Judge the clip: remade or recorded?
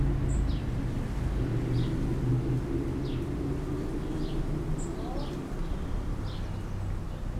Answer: recorded